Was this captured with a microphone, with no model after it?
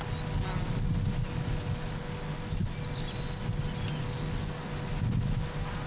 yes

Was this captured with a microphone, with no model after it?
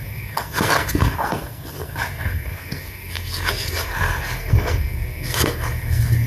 no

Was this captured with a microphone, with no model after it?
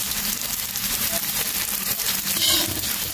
no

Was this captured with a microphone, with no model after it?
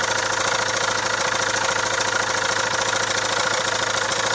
yes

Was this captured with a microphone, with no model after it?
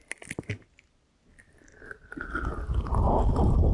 yes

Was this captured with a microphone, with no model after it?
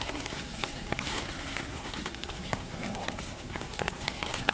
no